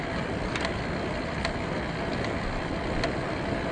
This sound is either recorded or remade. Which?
recorded